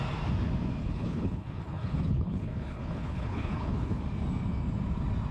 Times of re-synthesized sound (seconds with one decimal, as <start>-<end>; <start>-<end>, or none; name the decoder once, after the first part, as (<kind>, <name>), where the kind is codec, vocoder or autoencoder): 0.8-4.0 (codec, HILCodec)